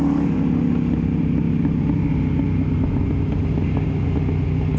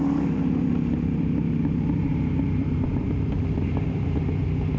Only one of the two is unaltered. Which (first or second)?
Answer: first